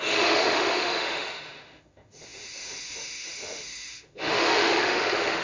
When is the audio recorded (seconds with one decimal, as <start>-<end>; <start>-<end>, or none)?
none